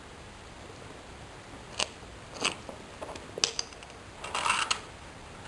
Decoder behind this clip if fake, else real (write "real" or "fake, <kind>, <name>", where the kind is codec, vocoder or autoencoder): real